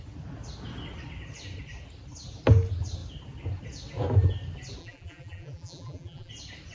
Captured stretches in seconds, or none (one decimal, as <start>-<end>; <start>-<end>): 0.0-4.8; 6.3-6.7